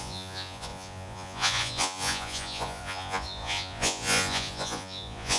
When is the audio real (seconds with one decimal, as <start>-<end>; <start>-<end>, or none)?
none